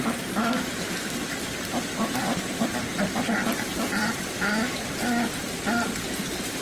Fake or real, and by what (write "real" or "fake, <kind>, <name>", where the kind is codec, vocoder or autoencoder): real